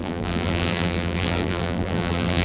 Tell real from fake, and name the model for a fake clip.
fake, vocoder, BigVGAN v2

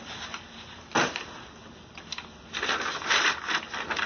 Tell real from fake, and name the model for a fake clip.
real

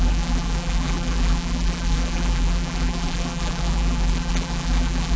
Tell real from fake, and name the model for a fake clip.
fake, vocoder, BigVGAN v2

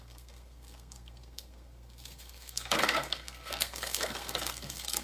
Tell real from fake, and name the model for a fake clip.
fake, codec, SNAC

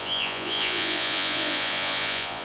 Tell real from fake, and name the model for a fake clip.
fake, vocoder, Vocos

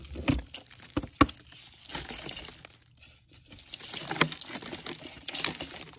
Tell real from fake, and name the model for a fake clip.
real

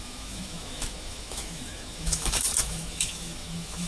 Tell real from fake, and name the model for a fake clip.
fake, autoencoder, DAC-VAE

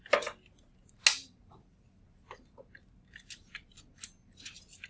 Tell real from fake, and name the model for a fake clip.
real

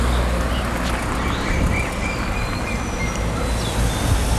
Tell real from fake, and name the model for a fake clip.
real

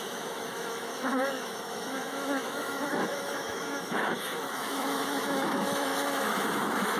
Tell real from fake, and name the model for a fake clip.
fake, autoencoder, DAC-VAE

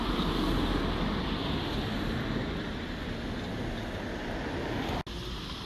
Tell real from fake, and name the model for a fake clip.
real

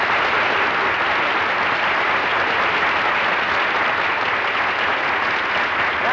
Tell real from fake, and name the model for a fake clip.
real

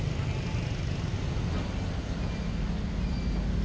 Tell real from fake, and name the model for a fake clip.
real